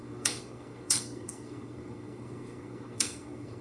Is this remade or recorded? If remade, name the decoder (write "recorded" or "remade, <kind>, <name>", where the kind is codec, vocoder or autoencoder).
remade, codec, SNAC